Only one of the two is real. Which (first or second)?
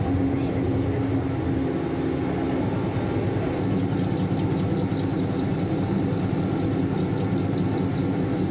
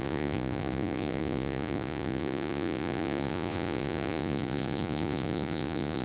first